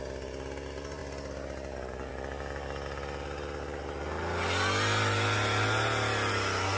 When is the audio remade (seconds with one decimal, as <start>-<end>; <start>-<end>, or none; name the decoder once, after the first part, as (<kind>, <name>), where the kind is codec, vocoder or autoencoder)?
none